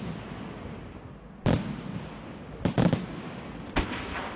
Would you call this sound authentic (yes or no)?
yes